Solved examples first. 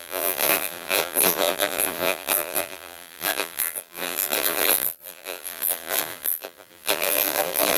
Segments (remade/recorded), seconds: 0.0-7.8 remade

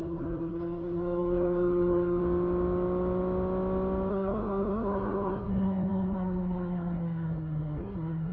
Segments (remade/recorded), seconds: 0.0-2.2 remade; 2.2-4.1 recorded; 4.1-8.3 remade

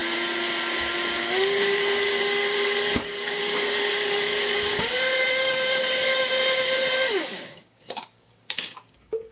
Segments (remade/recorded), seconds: 0.0-1.2 recorded; 1.2-9.3 remade

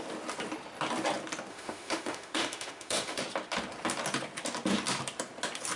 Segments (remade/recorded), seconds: 0.0-1.5 recorded; 1.5-3.2 remade; 3.2-5.8 recorded

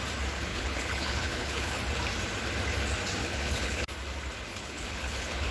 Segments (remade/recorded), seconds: 0.0-0.5 recorded; 0.5-1.8 remade; 1.8-3.2 recorded; 3.2-3.9 remade; 3.9-4.5 recorded; 4.5-5.5 remade

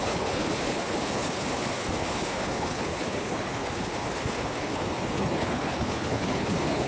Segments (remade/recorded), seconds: 0.0-6.9 remade